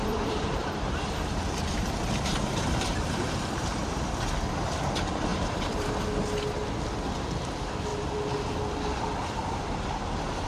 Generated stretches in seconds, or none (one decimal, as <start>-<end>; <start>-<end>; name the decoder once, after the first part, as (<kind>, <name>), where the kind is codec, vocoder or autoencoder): 0.0-4.2 (vocoder, BigVGAN v2); 5.3-5.9